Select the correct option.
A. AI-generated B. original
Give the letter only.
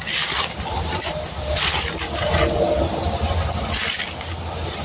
B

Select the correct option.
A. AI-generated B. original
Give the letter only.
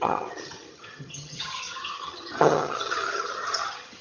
A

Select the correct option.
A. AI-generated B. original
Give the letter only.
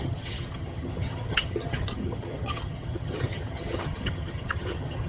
A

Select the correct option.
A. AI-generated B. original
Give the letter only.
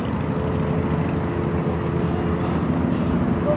B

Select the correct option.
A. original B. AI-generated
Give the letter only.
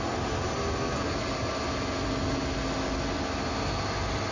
A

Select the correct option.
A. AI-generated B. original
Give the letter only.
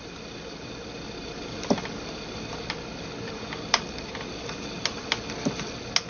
B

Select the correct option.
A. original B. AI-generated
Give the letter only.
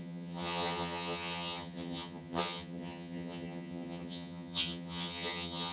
B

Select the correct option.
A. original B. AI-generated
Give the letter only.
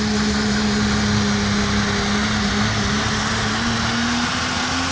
A